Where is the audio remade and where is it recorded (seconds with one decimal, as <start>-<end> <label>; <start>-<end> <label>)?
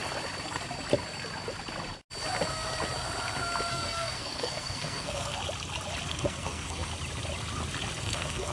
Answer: 0.0-3.7 recorded; 3.7-5.4 remade; 5.4-6.1 recorded; 6.1-6.9 remade; 6.9-8.0 recorded; 8.0-8.5 remade